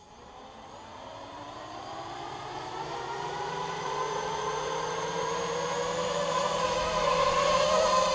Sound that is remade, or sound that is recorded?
remade